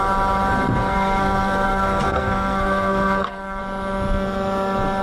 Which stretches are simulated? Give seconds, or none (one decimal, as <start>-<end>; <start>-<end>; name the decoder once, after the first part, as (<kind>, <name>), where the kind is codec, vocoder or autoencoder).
0.8-3.6 (codec, SNAC)